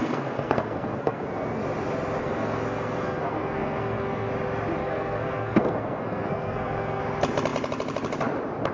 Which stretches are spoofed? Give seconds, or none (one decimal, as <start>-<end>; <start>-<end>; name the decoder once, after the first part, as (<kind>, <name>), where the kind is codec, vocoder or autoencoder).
0.0-1.6 (codec, SNAC); 2.2-4.3; 4.8-7.0